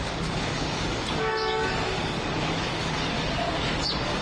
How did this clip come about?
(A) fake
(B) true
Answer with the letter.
A